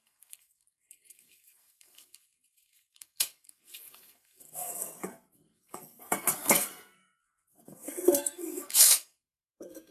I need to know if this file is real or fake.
fake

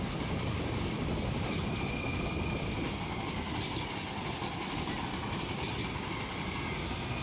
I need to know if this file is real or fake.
real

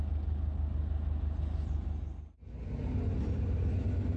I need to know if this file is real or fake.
real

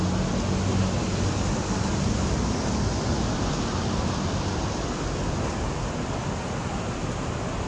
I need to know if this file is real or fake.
real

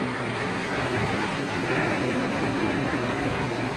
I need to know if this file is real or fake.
fake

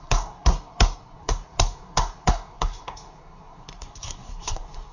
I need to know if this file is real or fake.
fake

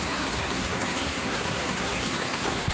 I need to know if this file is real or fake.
fake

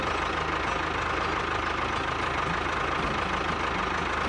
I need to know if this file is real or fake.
real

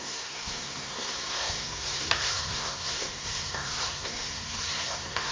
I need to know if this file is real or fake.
fake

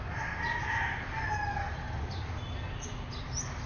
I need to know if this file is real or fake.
real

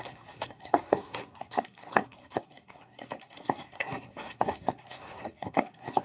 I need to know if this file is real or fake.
fake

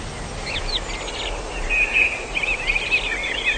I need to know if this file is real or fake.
real